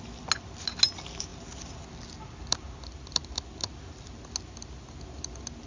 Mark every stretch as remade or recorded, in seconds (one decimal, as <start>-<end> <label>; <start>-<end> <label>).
0.0-5.7 recorded